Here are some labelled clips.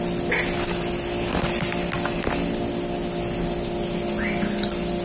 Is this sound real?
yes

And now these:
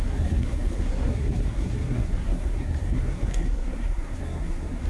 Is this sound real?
no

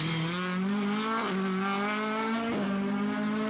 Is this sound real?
yes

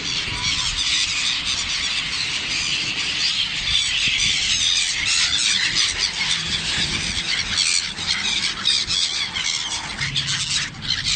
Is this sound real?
yes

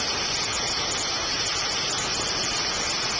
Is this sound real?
yes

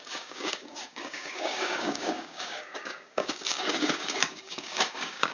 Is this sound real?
no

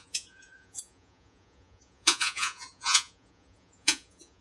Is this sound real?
no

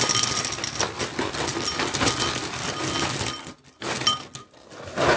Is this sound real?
yes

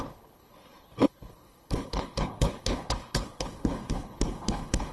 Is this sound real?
no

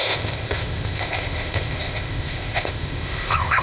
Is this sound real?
no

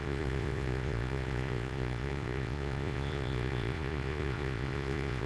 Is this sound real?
no